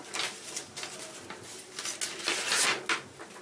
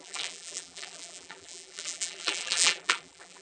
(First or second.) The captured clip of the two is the first